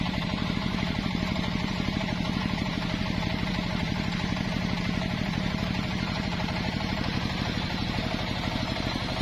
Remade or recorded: remade